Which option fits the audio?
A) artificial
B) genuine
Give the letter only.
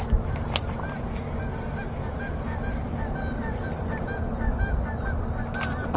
B